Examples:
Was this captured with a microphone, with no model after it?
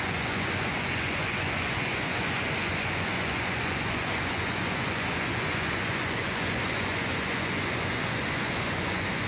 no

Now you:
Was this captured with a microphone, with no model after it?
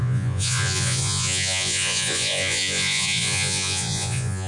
no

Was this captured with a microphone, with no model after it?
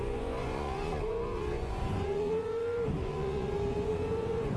no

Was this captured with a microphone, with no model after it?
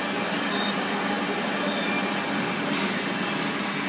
yes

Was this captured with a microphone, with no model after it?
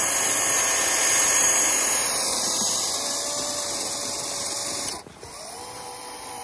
yes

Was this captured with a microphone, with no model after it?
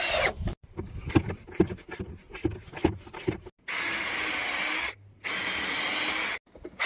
yes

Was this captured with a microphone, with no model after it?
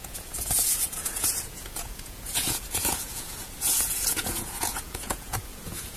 no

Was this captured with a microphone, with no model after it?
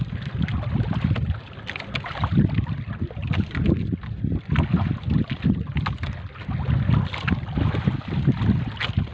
yes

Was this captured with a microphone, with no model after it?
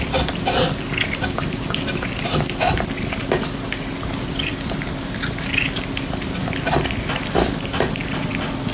yes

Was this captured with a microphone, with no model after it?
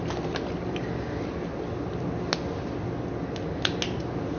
yes